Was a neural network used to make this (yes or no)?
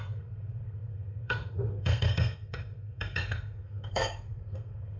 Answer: yes